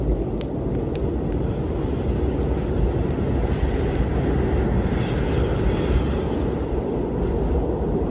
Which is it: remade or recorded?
recorded